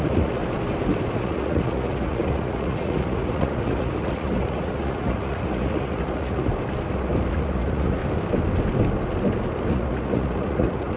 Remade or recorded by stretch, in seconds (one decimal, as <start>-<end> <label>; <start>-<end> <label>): 0.0-0.4 remade; 0.4-1.2 recorded; 1.2-6.5 remade; 6.5-7.3 recorded; 7.3-8.0 remade; 8.0-9.7 recorded; 9.7-11.0 remade